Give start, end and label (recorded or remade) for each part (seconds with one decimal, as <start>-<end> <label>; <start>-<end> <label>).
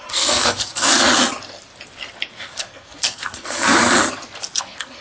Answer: 0.0-0.9 remade; 0.9-2.4 recorded; 2.4-3.8 remade; 3.8-4.6 recorded; 4.6-5.0 remade